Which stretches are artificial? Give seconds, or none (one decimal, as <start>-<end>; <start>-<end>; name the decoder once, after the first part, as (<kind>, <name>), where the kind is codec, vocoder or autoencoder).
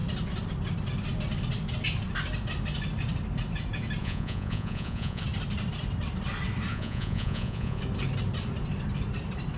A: 4.0-5.2 (vocoder, Vocos); 6.7-7.8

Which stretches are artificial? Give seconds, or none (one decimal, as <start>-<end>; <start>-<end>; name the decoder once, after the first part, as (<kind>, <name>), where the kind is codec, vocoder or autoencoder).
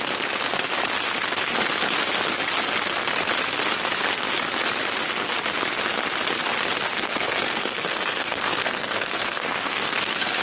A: 6.9-10.4 (codec, SNAC)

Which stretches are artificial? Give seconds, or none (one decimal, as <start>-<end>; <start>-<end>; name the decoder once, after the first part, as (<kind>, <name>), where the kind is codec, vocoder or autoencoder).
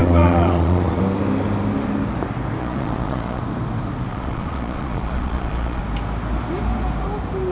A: 0.0-1.0 (vocoder, Vocos); 2.6-3.4; 4.1-5.8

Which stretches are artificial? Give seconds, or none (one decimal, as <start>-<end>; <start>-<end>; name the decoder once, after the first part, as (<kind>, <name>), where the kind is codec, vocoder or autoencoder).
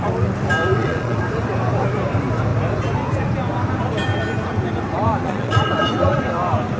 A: 0.7-1.2 (vocoder, Vocos); 5.2-6.2